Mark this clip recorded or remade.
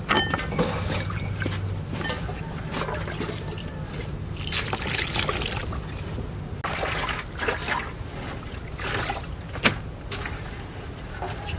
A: recorded